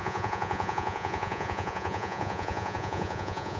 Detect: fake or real fake